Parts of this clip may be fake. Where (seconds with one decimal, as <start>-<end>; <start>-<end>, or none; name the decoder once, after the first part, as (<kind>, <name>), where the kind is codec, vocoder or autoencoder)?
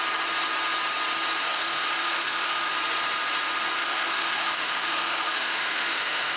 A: 1.5-2.7 (autoencoder, DAC-VAE); 3.8-6.4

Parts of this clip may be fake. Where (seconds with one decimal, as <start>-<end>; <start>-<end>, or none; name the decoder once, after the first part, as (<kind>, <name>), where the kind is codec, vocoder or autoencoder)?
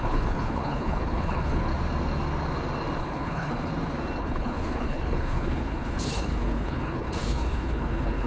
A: 0.0-1.7 (codec, HILCodec); 3.0-3.7; 4.2-8.3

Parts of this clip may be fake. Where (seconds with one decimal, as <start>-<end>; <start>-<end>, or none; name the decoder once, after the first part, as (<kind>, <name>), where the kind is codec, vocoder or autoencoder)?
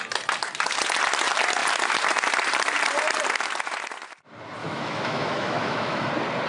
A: 4.6-6.1 (autoencoder, DAC-VAE)